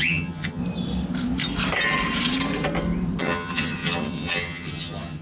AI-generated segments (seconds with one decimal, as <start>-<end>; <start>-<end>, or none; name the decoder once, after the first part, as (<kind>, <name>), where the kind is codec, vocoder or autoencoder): 0.0-0.6 (vocoder, HiFi-GAN); 3.2-5.2